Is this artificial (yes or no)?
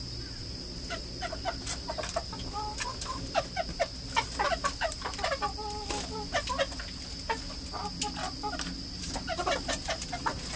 no